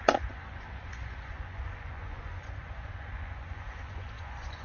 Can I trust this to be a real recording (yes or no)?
no